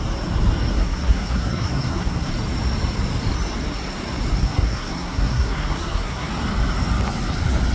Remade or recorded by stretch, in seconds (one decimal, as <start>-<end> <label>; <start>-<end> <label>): 0.0-0.7 recorded; 0.7-2.3 remade; 2.3-4.4 recorded; 4.4-6.3 remade; 6.3-7.7 recorded